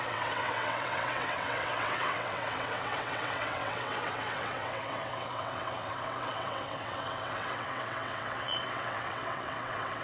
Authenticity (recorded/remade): remade